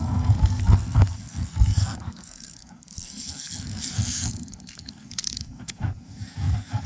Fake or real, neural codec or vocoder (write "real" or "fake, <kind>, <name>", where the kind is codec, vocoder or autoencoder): fake, codec, SNAC